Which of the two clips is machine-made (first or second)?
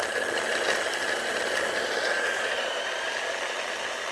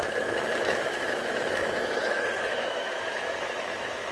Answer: second